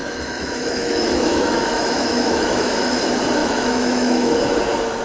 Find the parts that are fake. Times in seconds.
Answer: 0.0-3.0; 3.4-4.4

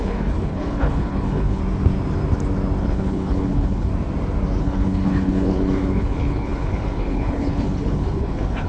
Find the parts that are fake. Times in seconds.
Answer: 0.0-1.6; 2.8-3.9; 4.6-8.7

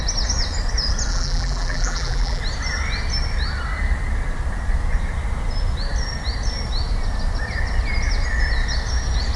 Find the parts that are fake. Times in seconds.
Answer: 1.1-2.4